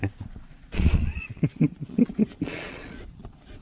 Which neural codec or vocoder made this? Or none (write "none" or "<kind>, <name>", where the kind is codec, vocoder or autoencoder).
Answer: vocoder, Vocos